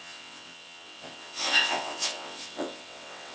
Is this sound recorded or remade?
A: remade